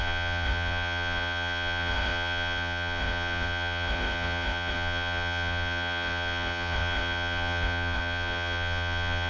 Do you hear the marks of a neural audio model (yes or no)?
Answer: yes